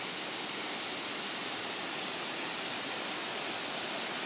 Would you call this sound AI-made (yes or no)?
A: no